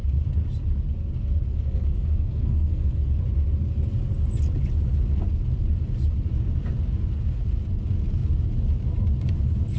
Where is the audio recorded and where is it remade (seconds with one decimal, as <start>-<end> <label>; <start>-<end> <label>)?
0.0-1.5 recorded; 1.5-3.1 remade; 3.1-9.8 recorded